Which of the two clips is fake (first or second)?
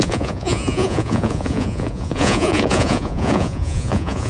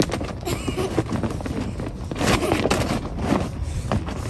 first